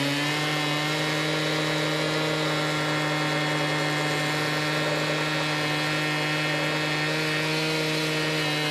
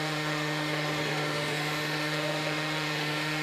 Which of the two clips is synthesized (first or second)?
second